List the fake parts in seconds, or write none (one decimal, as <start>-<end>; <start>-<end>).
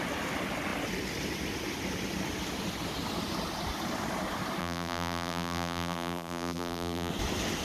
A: 4.6-7.1